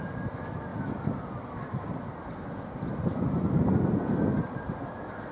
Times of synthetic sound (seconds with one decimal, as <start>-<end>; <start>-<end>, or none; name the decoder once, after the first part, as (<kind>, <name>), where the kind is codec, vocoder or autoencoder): 0.7-3.9 (vocoder, BigVGAN v2)